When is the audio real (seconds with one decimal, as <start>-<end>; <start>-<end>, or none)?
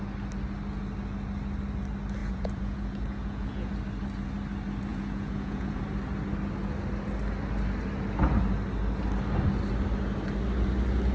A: 0.0-2.2; 3.7-4.9; 5.8-11.1